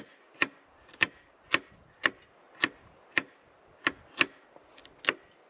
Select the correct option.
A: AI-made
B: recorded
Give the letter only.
B